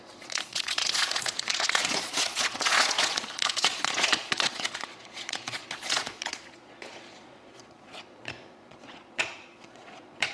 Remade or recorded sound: remade